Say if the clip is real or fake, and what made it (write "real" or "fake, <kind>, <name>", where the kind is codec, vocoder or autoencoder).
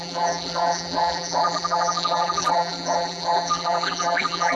fake, vocoder, BigVGAN v2